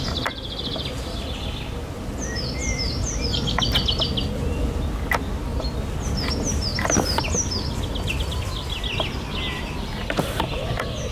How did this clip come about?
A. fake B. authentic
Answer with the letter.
B